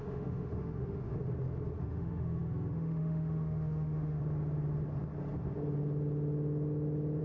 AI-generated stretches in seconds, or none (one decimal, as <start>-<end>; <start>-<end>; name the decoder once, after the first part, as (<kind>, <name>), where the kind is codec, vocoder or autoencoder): 0.0-1.1 (autoencoder, DAC-VAE); 1.8-4.2